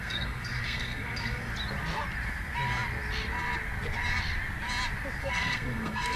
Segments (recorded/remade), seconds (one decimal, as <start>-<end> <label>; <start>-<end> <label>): 0.0-1.5 remade; 1.5-5.2 recorded; 5.2-6.2 remade